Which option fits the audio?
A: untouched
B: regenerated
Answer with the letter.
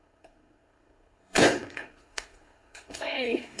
B